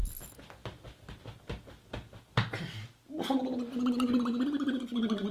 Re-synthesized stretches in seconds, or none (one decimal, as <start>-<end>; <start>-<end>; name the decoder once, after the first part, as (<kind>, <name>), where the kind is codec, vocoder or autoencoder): none